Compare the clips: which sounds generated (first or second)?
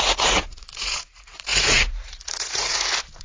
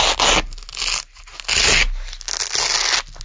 first